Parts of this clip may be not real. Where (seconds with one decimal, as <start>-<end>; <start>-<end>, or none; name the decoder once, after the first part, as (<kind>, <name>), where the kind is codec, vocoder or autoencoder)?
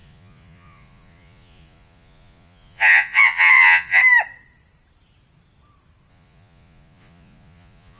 0.0-4.0 (vocoder, Vocos); 6.1-8.0